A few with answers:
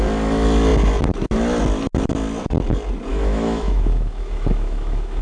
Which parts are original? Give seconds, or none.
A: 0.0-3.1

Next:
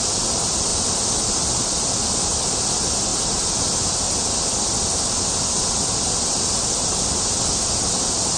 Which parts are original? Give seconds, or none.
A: 0.0-8.4

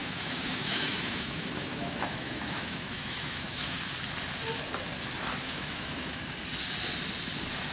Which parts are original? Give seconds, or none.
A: 3.9-5.4; 6.2-7.7

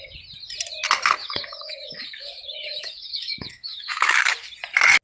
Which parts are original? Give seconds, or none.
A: 0.0-1.2; 4.2-5.0